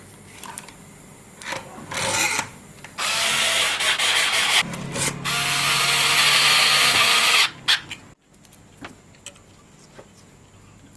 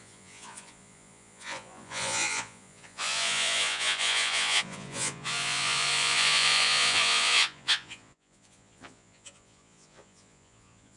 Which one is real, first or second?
first